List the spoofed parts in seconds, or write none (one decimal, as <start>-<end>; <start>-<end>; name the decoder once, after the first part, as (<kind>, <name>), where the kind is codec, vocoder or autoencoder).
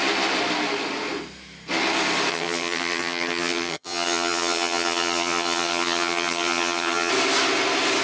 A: 2.3-7.1 (vocoder, HiFi-GAN)